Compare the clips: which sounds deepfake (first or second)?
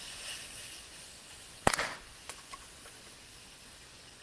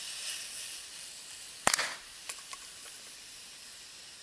first